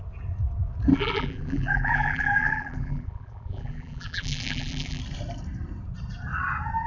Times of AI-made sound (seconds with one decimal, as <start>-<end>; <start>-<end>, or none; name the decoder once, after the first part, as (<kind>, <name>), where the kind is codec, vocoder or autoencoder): 0.9-5.0 (vocoder, BigVGAN v2)